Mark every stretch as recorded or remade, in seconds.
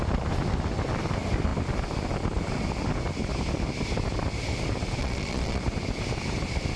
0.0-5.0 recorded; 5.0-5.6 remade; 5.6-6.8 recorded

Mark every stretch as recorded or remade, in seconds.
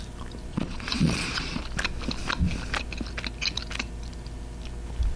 0.0-0.5 recorded; 0.5-1.6 remade; 1.6-5.2 recorded